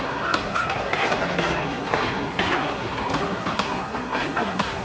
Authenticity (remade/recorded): remade